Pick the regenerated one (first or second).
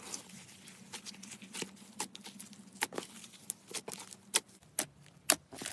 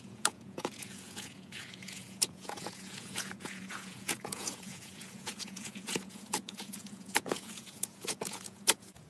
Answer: second